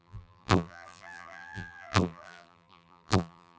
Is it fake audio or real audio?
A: fake